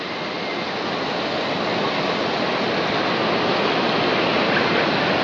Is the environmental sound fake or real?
real